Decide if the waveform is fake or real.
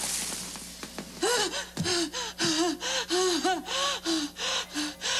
real